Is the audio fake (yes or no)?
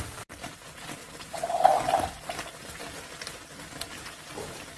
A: no